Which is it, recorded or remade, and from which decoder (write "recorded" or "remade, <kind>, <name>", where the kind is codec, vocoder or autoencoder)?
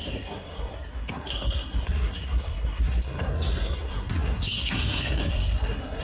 remade, codec, SNAC